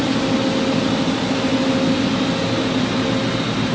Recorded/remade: recorded